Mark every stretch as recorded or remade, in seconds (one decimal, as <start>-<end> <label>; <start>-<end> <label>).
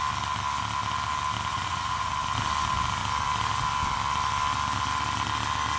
0.0-1.5 recorded; 1.5-2.1 remade; 2.1-5.8 recorded